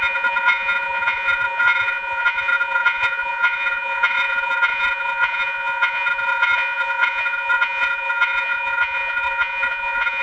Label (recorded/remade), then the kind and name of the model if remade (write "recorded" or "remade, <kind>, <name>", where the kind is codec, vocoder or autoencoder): remade, vocoder, Vocos